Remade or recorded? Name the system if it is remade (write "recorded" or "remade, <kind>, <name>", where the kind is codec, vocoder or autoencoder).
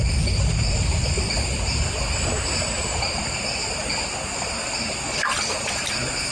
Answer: recorded